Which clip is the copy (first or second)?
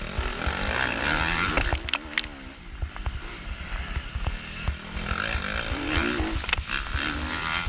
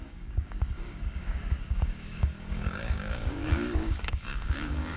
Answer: second